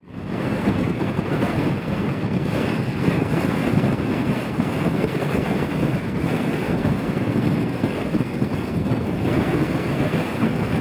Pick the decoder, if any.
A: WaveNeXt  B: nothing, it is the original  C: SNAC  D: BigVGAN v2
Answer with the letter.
C